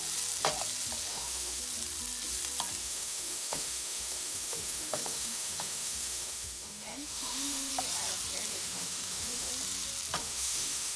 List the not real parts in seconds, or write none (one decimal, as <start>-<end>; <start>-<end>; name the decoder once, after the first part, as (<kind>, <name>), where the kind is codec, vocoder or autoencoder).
1.1-1.6 (autoencoder, DAC-VAE); 2.8-7.7; 8.5-9.5; 10.2-11.0